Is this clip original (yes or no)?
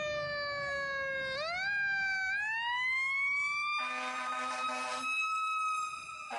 yes